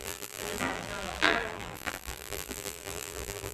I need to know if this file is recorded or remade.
remade